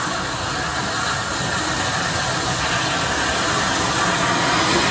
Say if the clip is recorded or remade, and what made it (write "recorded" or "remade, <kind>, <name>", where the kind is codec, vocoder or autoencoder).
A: recorded